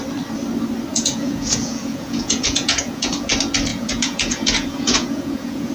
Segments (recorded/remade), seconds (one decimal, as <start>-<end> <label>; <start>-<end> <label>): 0.0-0.9 recorded; 0.9-3.3 remade; 3.3-3.7 recorded; 3.7-5.7 remade